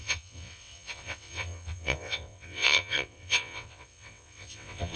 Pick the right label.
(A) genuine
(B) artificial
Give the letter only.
B